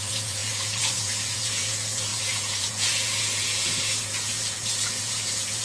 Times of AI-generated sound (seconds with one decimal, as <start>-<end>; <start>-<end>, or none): 0.0-5.6